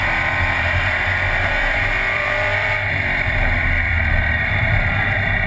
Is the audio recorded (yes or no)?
no